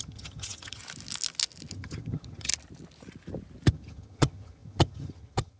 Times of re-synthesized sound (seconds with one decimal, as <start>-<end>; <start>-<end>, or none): 0.0-0.8; 1.7-2.5; 3.7-5.6